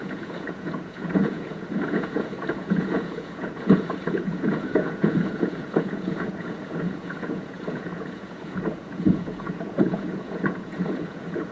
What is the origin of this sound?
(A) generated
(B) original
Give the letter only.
A